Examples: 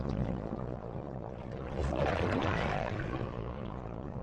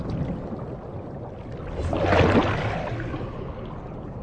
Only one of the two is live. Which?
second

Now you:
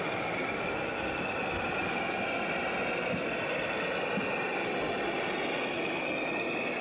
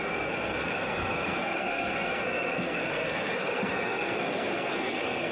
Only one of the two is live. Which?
first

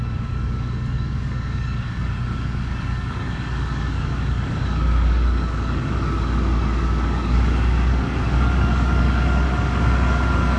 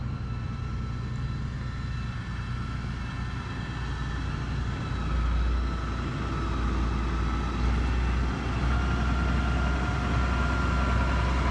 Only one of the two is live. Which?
second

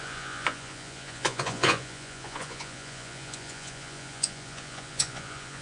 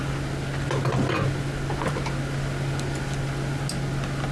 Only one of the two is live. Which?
second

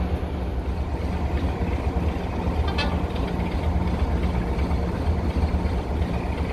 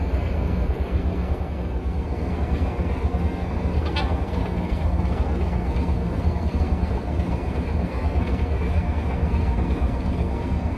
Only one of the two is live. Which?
first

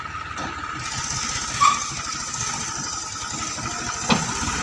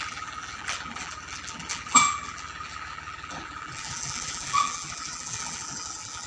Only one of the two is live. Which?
first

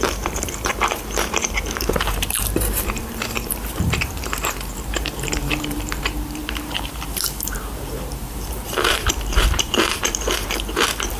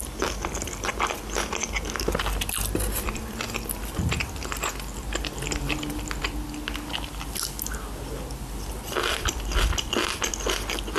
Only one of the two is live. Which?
second